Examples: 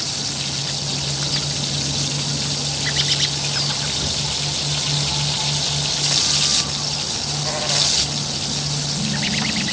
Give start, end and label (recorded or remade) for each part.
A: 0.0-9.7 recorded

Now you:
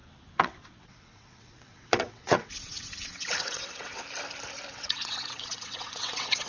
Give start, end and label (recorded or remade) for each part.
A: 0.0-4.0 remade; 4.0-4.7 recorded; 4.7-6.5 remade

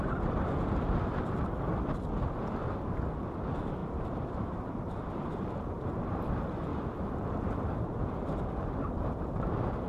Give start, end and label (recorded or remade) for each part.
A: 0.0-3.8 recorded; 3.8-6.2 remade; 6.2-6.7 recorded; 6.7-8.4 remade; 8.4-9.9 recorded

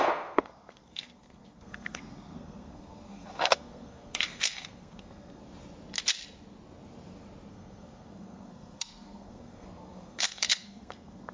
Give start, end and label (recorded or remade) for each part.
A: 0.0-5.4 remade; 5.4-7.5 recorded; 7.5-11.3 remade